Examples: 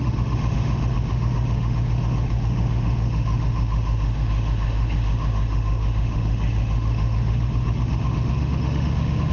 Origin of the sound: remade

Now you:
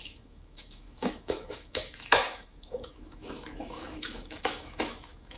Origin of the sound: remade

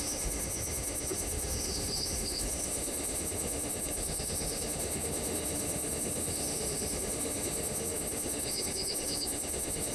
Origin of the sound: remade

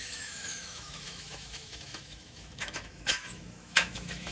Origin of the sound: remade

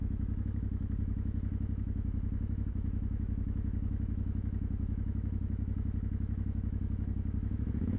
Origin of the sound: remade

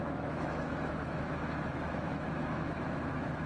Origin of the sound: remade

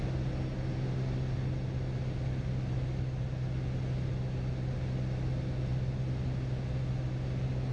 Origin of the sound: recorded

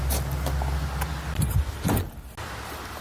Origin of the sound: recorded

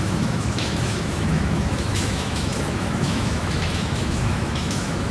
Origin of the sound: remade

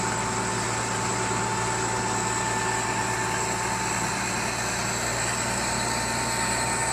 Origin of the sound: recorded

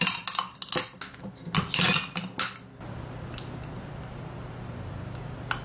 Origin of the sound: recorded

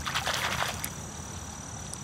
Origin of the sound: recorded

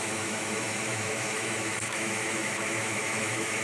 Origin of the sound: remade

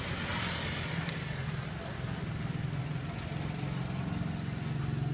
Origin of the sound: recorded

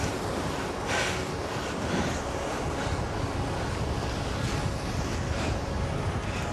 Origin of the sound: recorded